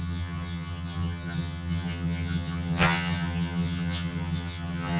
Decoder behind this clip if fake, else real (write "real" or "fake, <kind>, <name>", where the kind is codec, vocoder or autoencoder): fake, vocoder, HiFi-GAN